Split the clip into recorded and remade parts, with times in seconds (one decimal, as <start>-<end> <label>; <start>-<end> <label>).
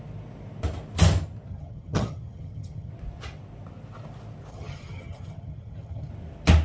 0.0-1.5 recorded; 1.5-2.9 remade; 2.9-4.5 recorded; 4.5-6.1 remade; 6.1-6.6 recorded